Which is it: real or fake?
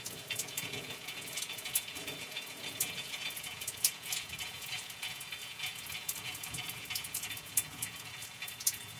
fake